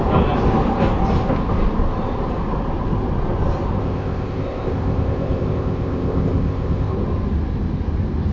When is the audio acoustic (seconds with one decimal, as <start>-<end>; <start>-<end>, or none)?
0.0-3.8; 6.9-8.3